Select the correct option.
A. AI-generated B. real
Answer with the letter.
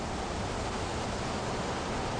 B